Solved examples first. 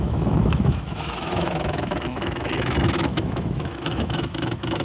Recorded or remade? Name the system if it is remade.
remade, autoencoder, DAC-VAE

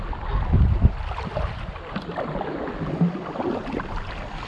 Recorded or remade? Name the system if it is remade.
recorded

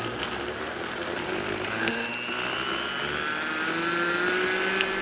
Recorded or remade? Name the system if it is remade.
recorded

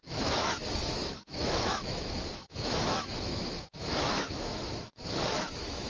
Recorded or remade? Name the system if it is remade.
remade, autoencoder, DAC-VAE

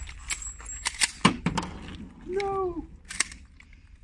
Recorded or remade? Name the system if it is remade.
recorded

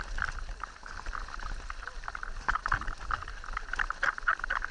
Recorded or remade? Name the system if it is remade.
recorded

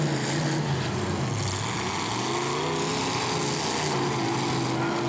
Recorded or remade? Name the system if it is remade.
recorded